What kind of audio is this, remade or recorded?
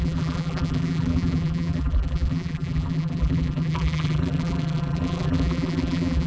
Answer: remade